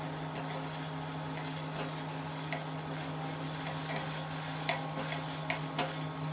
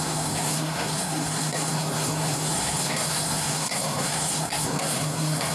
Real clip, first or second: first